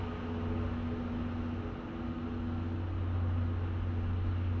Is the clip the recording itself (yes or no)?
yes